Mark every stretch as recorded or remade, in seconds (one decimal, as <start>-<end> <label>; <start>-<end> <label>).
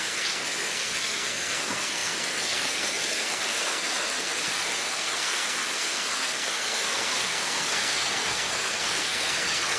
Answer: 0.0-9.8 remade